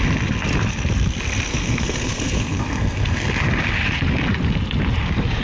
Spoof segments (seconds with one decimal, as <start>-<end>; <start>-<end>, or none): 1.5-3.3